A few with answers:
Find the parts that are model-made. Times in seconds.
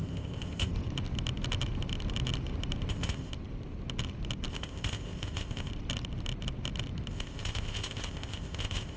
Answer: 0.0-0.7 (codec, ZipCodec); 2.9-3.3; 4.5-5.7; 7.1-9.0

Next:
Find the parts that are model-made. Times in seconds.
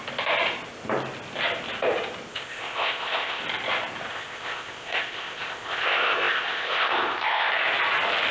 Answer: 2.3-3.4 (codec, ZipCodec); 4.1-7.5